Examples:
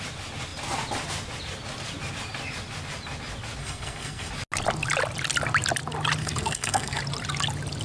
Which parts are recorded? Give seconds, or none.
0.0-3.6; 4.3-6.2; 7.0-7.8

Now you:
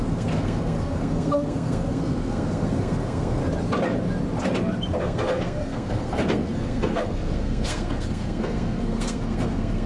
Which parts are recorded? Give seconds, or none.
3.4-5.0

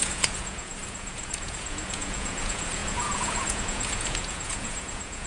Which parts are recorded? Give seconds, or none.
none

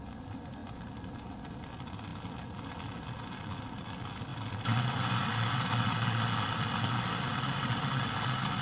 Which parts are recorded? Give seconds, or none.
0.0-8.6

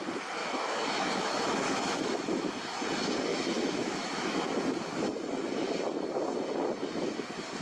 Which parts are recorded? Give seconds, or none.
0.0-0.4; 2.6-3.3; 4.4-7.6

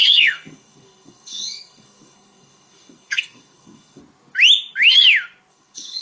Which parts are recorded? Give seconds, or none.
4.0-5.5